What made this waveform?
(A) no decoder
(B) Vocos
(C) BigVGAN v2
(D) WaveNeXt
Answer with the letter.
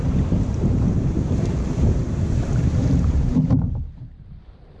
C